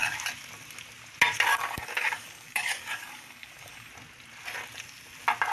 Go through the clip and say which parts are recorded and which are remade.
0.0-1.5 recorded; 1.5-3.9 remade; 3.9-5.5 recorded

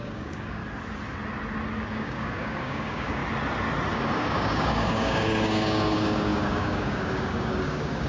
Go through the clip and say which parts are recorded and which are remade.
0.0-0.6 remade; 0.6-1.9 recorded; 1.9-3.2 remade; 3.2-3.9 recorded; 3.9-8.1 remade

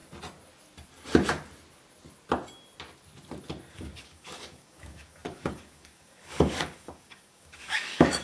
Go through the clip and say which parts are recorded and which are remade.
0.0-3.7 recorded; 3.7-8.2 remade

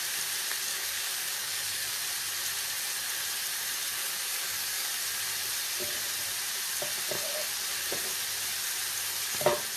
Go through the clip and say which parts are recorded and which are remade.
0.0-0.7 recorded; 0.7-2.0 remade; 2.0-3.9 recorded; 3.9-5.0 remade; 5.0-9.8 recorded

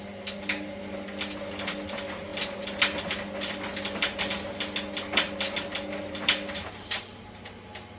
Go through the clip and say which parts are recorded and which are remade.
0.0-8.0 recorded

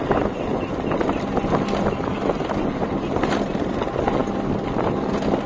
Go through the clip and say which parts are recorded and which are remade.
0.0-5.5 recorded

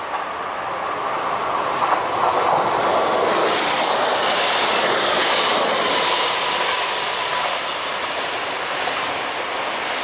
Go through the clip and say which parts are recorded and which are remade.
0.0-3.4 recorded; 3.4-3.9 remade; 3.9-4.8 recorded; 4.8-5.5 remade; 5.5-10.0 recorded

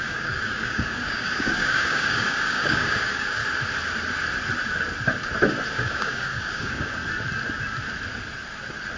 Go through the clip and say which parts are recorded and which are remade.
0.0-3.4 remade; 3.4-5.7 recorded; 5.7-7.0 remade; 7.0-9.0 recorded